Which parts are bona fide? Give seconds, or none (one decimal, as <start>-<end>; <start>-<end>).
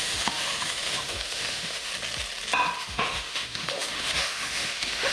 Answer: 1.9-2.8